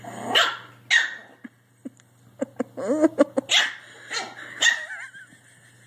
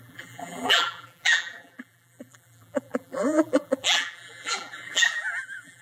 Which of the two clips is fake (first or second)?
second